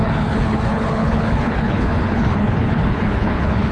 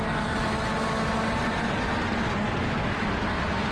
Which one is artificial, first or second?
first